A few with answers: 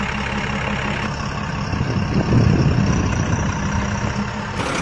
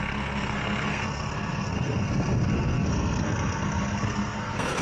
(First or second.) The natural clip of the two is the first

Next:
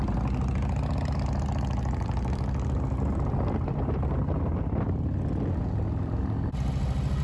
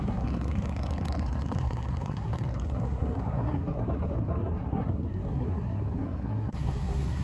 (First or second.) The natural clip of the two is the first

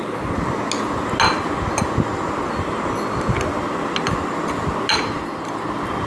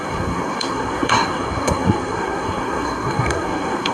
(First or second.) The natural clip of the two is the first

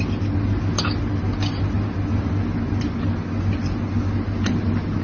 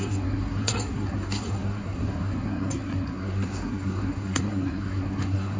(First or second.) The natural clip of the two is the first